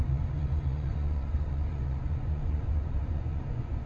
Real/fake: fake